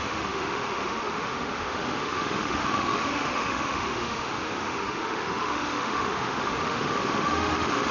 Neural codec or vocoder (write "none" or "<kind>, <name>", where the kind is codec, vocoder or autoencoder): autoencoder, DAC-VAE